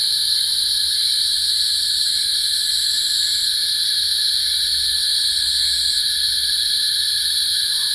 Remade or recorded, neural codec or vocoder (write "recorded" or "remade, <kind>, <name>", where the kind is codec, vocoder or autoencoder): remade, vocoder, BigVGAN v2